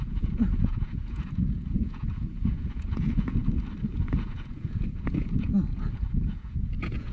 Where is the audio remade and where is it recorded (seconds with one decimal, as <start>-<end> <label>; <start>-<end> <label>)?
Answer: 0.0-3.4 remade; 3.4-3.9 recorded; 3.9-7.1 remade